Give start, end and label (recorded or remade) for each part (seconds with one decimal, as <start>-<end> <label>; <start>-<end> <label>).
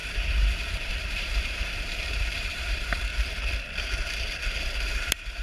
0.0-3.1 remade; 3.1-4.4 recorded; 4.4-5.4 remade